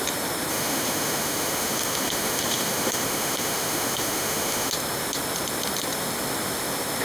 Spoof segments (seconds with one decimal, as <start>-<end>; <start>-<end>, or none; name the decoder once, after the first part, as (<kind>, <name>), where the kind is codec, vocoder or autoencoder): 0.5-4.7 (autoencoder, DAC-VAE)